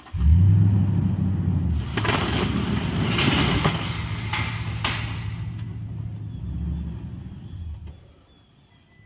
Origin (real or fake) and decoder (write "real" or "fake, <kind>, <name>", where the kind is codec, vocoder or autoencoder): real